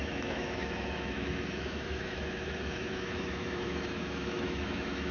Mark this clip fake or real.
fake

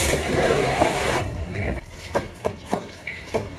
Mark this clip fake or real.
fake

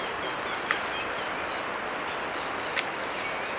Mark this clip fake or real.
real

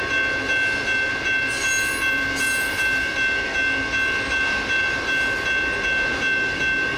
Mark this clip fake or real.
real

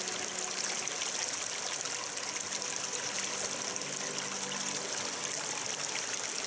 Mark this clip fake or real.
real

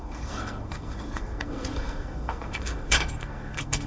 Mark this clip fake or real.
fake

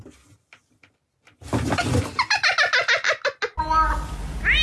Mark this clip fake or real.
real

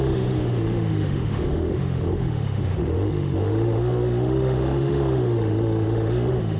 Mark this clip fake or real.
fake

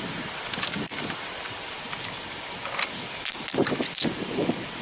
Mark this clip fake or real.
real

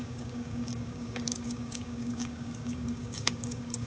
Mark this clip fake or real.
fake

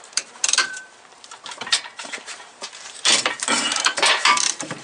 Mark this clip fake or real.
fake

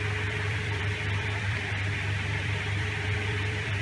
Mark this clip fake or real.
fake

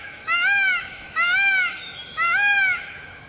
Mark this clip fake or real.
fake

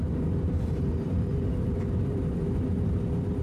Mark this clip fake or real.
fake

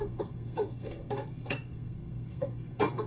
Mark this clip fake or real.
fake